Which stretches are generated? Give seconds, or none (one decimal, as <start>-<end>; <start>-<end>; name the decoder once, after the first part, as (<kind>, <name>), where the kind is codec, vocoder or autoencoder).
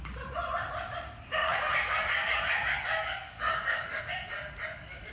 1.4-4.0 (codec, DAC)